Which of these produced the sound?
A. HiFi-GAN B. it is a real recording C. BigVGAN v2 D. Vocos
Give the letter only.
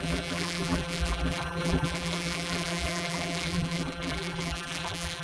C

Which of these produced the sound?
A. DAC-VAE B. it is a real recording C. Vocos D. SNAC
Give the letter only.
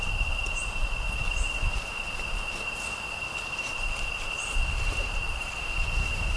B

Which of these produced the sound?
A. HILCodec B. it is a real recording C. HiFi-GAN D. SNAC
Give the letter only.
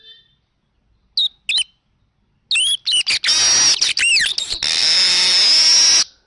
B